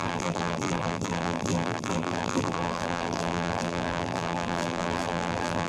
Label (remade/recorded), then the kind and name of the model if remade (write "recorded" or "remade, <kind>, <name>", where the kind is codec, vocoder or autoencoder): remade, vocoder, BigVGAN v2